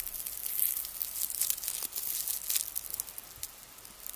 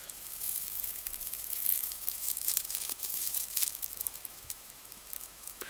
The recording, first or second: first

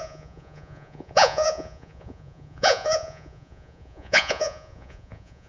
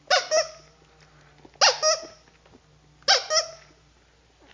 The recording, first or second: second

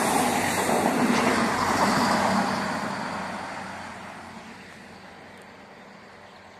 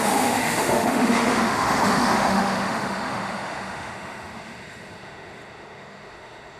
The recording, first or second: first